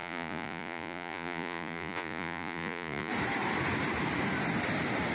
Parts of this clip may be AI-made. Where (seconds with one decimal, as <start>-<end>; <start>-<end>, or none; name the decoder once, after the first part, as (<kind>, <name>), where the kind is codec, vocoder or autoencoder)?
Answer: 0.0-3.1 (vocoder, Vocos)